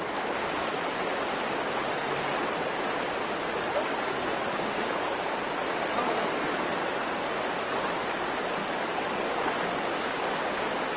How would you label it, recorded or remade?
recorded